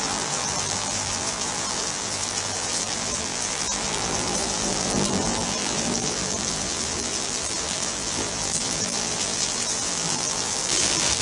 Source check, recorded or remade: remade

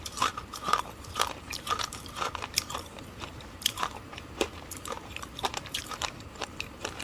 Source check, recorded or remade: remade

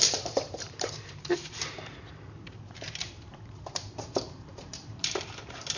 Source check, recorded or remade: remade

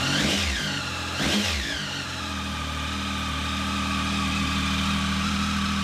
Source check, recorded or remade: recorded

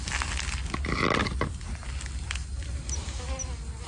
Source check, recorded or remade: recorded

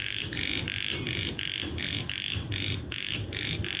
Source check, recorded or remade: remade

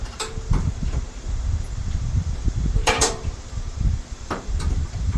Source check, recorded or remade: remade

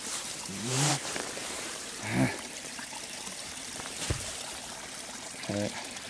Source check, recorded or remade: remade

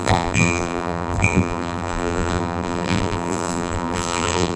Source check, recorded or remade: remade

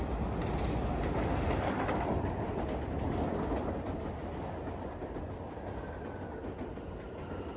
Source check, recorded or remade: recorded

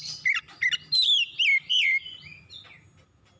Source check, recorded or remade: recorded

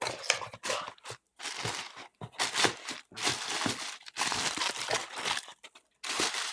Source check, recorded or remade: recorded